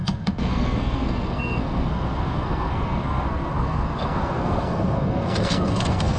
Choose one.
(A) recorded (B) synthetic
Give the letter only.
B